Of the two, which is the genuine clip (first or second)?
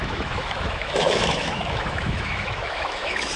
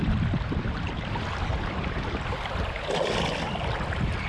second